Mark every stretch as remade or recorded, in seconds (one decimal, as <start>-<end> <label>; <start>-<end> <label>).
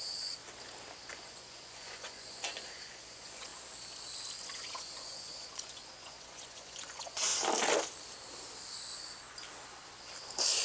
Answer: 0.0-0.4 remade; 0.4-1.1 recorded; 1.1-3.5 remade; 3.5-4.4 recorded; 4.4-7.3 remade; 7.3-10.6 recorded